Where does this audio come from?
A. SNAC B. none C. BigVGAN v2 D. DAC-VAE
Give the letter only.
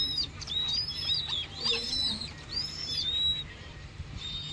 C